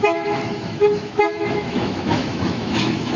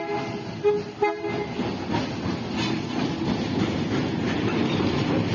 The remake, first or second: first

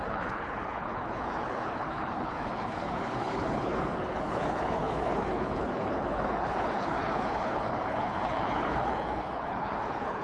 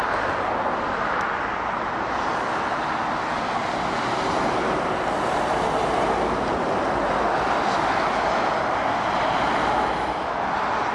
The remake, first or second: first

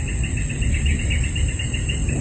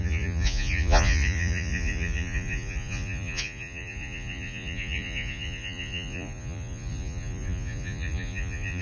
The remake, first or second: second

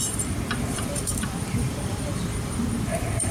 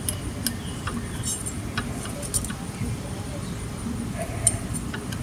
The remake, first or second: first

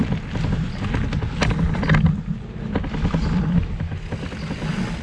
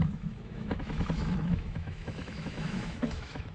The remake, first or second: second